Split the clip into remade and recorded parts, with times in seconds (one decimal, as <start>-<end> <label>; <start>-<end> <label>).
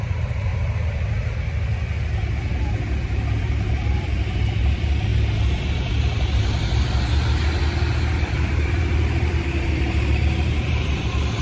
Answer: 0.0-0.5 remade; 0.5-3.4 recorded; 3.4-5.1 remade; 5.1-5.7 recorded; 5.7-7.1 remade; 7.1-8.2 recorded; 8.2-11.4 remade